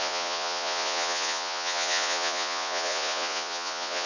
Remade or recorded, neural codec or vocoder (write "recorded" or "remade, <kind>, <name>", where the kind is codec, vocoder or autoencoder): remade, vocoder, Vocos